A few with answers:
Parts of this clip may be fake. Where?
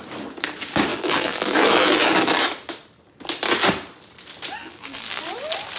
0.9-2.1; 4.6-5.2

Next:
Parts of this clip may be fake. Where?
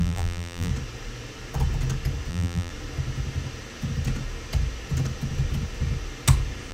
0.0-0.7; 2.3-2.7